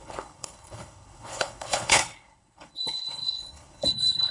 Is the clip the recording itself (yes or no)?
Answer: no